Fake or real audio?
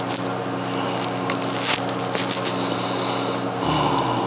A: real